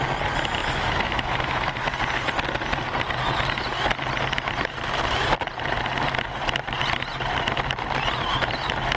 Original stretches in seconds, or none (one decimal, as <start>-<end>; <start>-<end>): 0.0-0.6; 1.7-9.0